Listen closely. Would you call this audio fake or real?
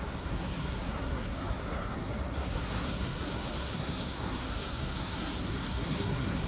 fake